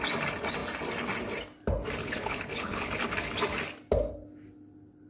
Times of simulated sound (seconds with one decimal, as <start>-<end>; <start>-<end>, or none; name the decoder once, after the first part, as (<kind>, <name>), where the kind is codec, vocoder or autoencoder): 2.0-2.9 (codec, HILCodec)